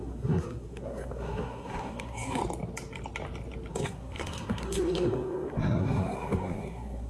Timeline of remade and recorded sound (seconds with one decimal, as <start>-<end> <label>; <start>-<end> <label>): 0.0-2.4 remade; 2.4-3.7 recorded; 3.7-7.1 remade